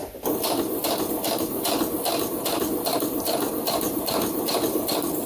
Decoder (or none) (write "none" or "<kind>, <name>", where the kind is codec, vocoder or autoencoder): none